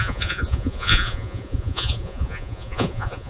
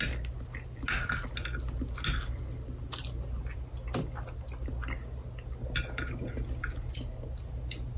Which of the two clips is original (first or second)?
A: second